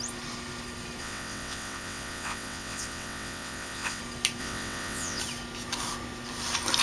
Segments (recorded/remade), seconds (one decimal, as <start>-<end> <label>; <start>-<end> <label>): 0.0-1.0 recorded; 1.0-4.0 remade; 4.0-4.4 recorded; 4.4-5.2 remade; 5.2-6.8 recorded